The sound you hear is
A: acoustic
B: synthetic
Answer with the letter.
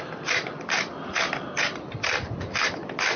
A